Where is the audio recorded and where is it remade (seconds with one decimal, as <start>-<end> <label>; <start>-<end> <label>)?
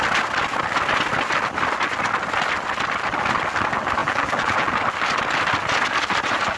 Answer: 0.0-4.0 recorded; 4.0-4.7 remade; 4.7-6.6 recorded